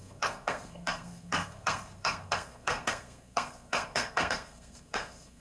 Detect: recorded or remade remade